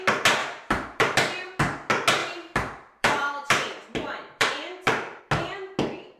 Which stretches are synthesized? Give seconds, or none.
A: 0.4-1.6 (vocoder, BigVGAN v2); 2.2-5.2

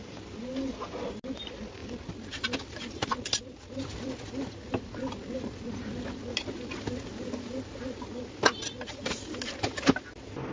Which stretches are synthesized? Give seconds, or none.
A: 1.8-6.3 (vocoder, BigVGAN v2)